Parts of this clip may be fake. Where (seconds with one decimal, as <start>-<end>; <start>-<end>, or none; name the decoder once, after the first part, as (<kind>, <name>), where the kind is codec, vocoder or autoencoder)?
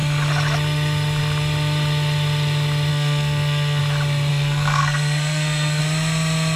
2.9-3.8 (codec, SNAC); 4.3-5.8